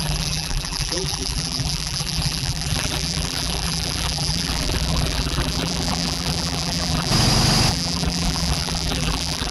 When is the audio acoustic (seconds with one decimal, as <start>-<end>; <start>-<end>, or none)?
7.1-7.7